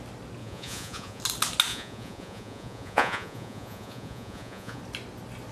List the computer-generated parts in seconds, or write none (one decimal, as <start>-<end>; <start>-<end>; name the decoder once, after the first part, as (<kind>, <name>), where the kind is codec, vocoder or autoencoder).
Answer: 0.4-1.2 (vocoder, Vocos); 1.7-4.8